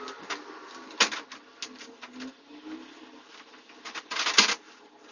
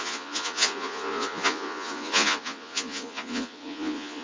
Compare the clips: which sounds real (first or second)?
first